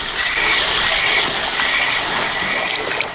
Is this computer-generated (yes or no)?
no